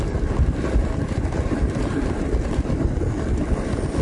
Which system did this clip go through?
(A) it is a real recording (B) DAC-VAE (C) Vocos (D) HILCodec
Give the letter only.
A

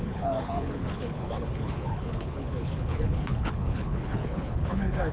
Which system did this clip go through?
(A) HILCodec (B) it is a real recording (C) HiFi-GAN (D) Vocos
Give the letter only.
A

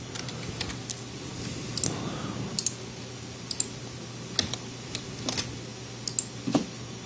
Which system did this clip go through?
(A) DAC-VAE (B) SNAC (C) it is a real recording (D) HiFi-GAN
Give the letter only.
C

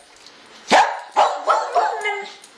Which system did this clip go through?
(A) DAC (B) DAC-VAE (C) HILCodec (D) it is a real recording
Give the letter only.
D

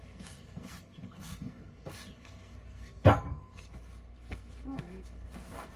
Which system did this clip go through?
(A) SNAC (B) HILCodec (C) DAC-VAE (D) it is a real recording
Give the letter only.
A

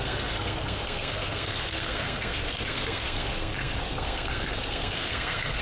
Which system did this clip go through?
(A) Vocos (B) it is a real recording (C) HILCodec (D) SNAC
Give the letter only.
D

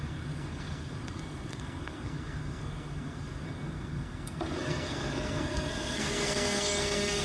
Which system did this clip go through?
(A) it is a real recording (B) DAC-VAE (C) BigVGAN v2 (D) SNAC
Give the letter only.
D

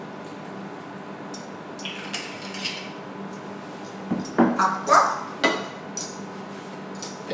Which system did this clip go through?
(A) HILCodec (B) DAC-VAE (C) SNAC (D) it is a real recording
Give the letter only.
D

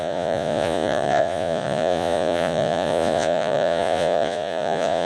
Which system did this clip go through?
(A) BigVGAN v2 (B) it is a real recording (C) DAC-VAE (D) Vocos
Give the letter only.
D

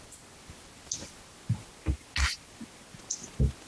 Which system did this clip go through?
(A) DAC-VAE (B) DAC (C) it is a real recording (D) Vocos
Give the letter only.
C